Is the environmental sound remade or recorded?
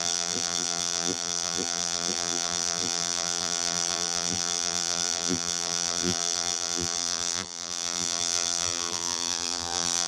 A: remade